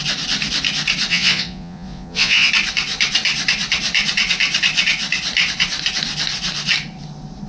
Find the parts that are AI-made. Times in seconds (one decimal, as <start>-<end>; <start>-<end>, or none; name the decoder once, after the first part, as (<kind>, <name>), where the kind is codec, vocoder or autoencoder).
1.1-2.5 (vocoder, Vocos)